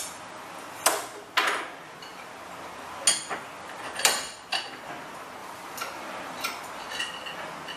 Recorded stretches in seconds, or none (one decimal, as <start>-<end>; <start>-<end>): 0.0-5.4; 7.0-7.8